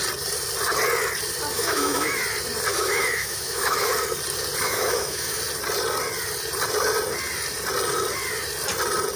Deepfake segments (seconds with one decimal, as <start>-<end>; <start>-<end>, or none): 1.5-2.2; 2.7-3.9; 4.6-5.4

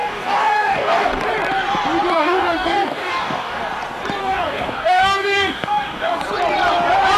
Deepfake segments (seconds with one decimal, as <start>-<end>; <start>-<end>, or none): 0.0-1.2; 2.1-3.6; 4.2-6.2